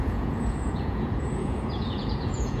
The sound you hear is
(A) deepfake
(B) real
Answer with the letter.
A